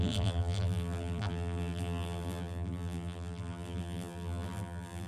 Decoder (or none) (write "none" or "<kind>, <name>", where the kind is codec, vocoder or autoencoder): vocoder, BigVGAN v2